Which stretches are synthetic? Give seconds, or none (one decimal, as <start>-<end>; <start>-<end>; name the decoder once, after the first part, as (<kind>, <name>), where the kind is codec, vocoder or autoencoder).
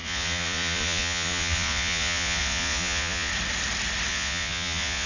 0.0-3.3 (vocoder, Vocos); 4.1-5.1